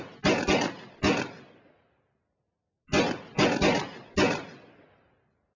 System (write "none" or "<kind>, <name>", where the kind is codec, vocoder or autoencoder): none